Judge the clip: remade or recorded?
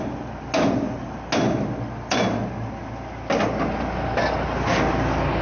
recorded